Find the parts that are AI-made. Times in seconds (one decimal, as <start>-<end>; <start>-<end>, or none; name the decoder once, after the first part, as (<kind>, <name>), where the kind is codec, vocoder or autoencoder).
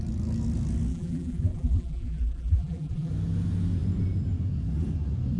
0.9-3.1 (vocoder, BigVGAN v2)